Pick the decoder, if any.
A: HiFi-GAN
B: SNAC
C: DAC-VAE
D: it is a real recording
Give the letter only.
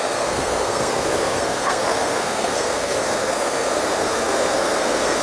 B